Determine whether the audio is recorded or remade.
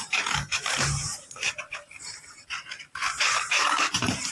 remade